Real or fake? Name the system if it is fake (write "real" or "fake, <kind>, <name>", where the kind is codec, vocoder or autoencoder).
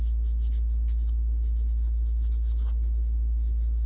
real